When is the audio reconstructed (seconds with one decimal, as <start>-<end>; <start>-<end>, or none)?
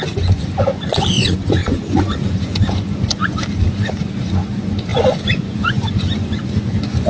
0.0-7.1